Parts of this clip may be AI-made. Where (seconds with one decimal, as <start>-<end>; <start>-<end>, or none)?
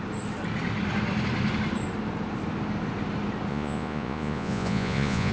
3.5-5.3